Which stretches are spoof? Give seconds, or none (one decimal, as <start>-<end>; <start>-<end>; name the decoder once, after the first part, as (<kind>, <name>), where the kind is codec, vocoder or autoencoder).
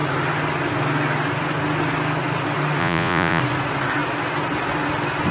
2.8-3.4 (vocoder, Vocos)